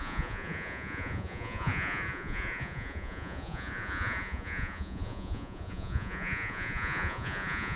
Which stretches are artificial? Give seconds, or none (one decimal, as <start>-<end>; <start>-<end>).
0.0-7.8